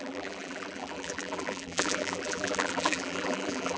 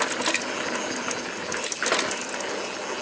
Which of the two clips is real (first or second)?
second